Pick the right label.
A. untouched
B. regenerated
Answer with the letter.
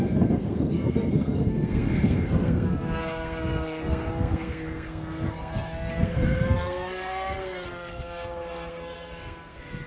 B